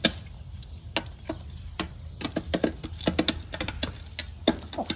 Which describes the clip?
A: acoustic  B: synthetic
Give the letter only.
A